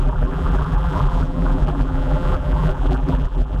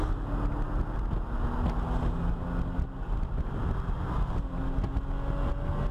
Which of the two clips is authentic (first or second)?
second